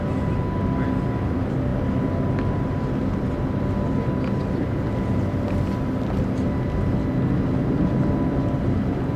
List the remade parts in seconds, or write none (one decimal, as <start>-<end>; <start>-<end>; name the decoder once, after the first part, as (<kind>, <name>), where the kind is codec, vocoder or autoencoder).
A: none